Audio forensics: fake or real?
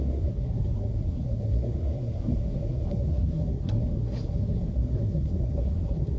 fake